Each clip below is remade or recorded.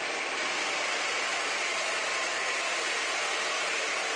recorded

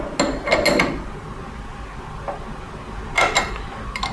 recorded